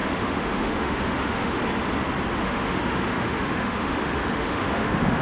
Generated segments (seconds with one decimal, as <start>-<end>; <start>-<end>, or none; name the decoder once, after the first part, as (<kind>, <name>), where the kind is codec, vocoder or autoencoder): 0.0-1.6 (autoencoder, DAC-VAE); 2.4-5.2